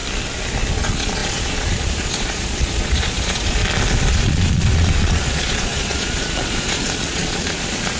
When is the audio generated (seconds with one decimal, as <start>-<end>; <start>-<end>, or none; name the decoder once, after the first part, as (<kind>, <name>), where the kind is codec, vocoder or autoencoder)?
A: 0.7-3.6 (vocoder, Vocos); 4.1-8.0